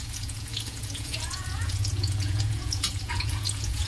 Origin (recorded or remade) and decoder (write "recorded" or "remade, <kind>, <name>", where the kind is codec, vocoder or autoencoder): remade, vocoder, Vocos